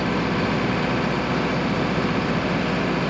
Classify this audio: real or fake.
real